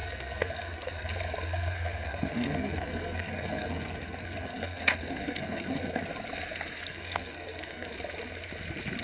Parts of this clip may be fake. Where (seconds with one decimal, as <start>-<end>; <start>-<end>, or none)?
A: 0.0-1.1; 1.5-6.0; 6.9-7.9